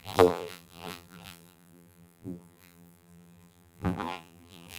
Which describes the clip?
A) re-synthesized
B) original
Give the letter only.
A